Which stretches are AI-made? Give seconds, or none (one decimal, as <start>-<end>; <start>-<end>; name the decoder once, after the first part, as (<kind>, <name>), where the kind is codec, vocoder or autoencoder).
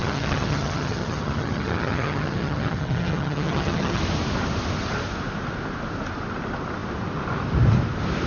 0.0-4.0 (vocoder, HiFi-GAN)